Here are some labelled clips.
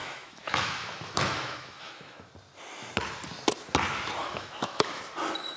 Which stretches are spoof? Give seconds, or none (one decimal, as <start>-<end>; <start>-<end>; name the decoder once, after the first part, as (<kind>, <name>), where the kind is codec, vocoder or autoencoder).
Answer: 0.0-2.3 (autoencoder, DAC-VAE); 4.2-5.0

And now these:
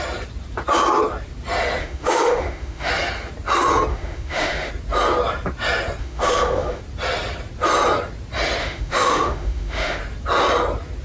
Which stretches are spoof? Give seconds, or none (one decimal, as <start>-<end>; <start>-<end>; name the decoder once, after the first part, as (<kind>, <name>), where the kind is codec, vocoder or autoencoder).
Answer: 1.8-2.9 (autoencoder, DAC-VAE); 3.9-4.7; 6.0-6.8; 8.6-10.0

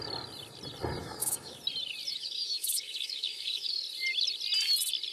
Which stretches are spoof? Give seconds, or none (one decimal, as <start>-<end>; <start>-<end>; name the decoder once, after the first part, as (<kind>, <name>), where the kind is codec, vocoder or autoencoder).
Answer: 1.0-1.6 (autoencoder, DAC-VAE); 2.1-3.7